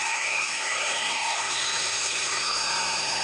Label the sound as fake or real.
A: fake